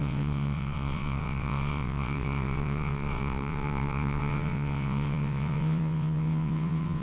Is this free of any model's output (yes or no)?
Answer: no